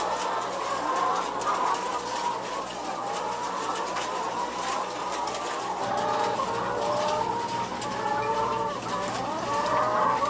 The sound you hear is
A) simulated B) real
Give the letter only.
A